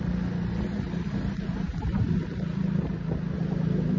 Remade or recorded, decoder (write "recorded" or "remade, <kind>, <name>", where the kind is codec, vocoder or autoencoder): recorded